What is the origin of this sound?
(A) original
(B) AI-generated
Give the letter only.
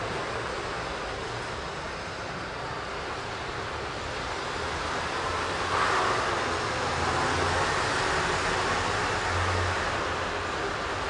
A